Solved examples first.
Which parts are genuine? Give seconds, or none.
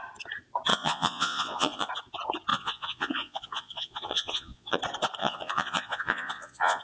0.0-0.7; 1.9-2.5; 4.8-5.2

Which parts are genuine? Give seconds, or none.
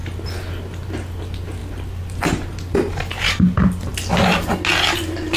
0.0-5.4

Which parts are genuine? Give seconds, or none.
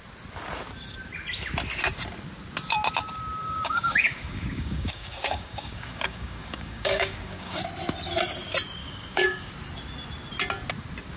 0.0-3.4; 7.6-8.8; 9.5-11.2